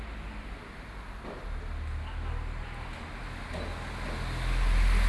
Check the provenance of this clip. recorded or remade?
recorded